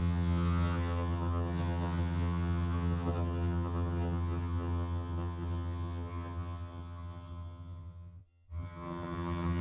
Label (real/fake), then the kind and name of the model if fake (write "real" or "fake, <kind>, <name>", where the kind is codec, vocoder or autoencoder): fake, vocoder, HiFi-GAN